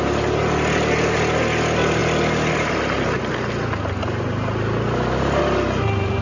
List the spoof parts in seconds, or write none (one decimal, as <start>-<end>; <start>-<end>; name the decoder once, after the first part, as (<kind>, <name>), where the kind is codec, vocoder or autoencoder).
none